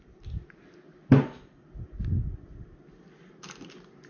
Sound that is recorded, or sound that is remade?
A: recorded